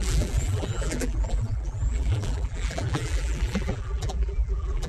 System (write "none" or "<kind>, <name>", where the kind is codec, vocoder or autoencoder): vocoder, BigVGAN v2